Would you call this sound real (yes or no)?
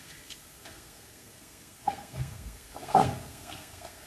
no